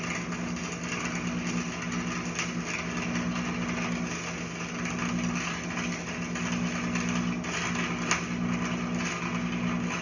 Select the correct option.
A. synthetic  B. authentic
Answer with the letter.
B